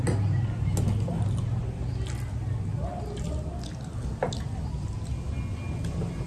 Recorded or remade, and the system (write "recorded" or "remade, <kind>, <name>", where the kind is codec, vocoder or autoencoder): recorded